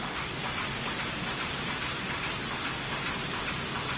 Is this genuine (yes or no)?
yes